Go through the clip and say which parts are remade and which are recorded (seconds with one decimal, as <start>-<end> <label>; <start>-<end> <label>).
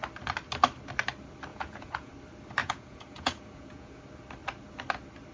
0.0-1.5 recorded; 1.5-2.1 remade; 2.1-2.6 recorded; 2.6-4.0 remade; 4.0-5.3 recorded